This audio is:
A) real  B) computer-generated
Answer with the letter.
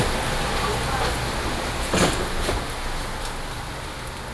A